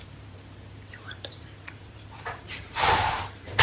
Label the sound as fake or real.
fake